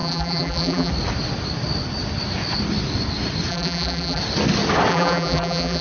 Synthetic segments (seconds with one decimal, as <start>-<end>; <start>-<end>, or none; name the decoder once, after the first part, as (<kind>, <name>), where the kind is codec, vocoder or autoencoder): 0.0-0.9 (vocoder, BigVGAN v2); 3.5-4.2; 4.9-5.8